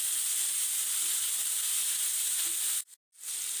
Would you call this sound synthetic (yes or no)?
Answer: no